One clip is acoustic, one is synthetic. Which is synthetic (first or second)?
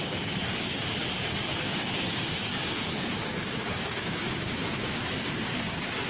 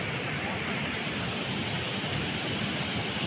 first